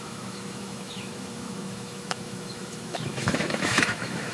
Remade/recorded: remade